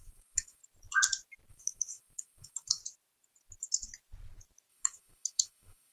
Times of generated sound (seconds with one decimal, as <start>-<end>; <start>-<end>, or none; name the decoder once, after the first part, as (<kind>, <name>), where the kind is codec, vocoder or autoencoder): 0.0-0.6 (autoencoder, DAC-VAE); 1.5-2.8; 4.7-5.9